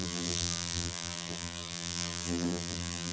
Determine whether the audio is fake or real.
fake